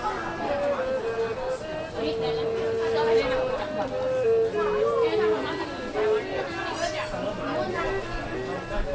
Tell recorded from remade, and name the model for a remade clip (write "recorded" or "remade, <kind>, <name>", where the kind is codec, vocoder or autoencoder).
recorded